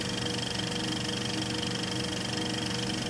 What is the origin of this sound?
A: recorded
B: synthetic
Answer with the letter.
A